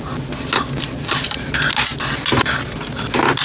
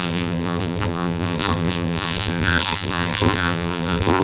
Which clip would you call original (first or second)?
first